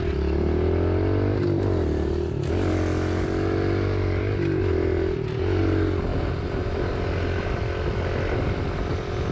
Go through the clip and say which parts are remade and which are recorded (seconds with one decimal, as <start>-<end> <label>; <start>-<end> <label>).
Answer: 0.0-6.1 recorded; 6.1-6.7 remade; 6.7-9.3 recorded